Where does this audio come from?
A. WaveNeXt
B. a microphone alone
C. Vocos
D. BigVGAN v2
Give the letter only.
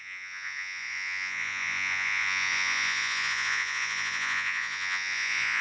C